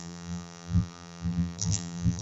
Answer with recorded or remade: remade